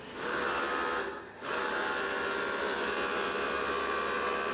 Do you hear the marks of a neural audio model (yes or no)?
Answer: no